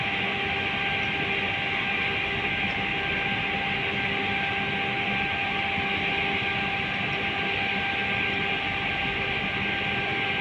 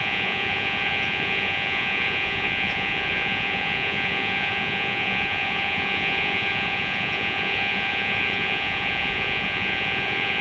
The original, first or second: first